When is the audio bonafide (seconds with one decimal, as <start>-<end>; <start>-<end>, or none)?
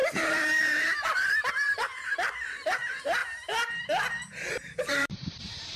3.2-4.5